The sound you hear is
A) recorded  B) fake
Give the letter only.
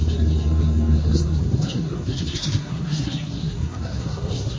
B